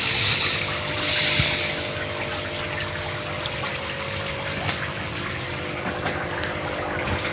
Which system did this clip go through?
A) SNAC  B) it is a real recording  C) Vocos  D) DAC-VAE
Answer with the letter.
B